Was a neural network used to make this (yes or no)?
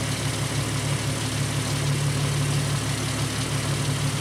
no